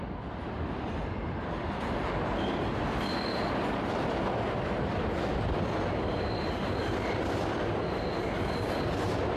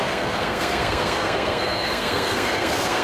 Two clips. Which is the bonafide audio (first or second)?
first